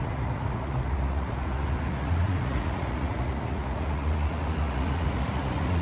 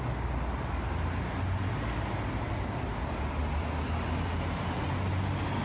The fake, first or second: first